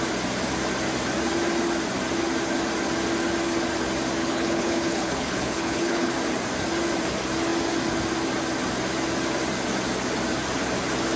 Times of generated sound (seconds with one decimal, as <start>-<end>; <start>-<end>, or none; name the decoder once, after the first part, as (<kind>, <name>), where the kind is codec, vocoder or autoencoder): 4.2-6.1 (codec, HILCodec)